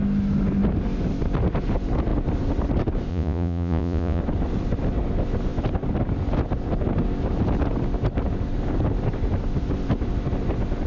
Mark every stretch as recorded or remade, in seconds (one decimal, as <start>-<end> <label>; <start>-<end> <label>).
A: 0.0-3.1 recorded; 3.1-4.2 remade; 4.2-10.9 recorded